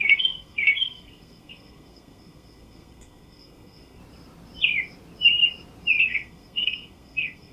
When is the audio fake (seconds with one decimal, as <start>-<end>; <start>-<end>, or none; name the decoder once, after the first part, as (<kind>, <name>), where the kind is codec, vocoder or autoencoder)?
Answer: 0.0-4.0 (codec, SNAC); 6.0-7.5